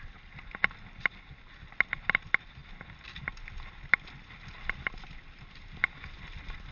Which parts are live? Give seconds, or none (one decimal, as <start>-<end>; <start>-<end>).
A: 0.0-6.7